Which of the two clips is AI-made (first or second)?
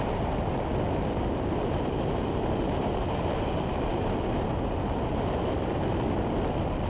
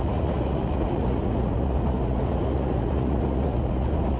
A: second